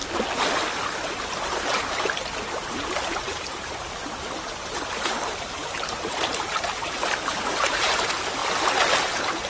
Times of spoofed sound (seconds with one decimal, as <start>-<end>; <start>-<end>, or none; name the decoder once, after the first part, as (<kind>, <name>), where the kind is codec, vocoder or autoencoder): 1.1-4.0 (vocoder, BigVGAN v2); 4.9-8.4; 9.1-9.5